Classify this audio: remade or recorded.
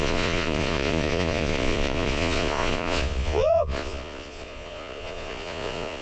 remade